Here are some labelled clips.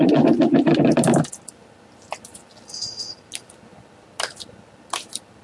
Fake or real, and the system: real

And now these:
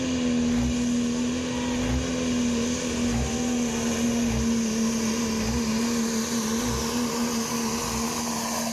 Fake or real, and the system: real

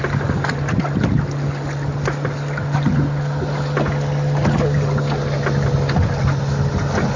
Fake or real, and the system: real